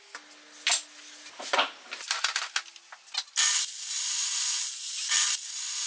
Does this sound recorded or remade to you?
recorded